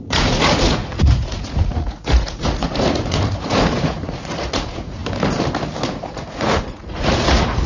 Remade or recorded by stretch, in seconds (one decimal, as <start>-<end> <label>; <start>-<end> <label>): 0.0-5.0 remade; 5.0-5.9 recorded; 5.9-7.7 remade

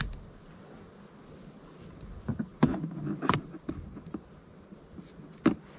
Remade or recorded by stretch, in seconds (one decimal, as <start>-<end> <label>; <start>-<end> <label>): 0.0-5.8 recorded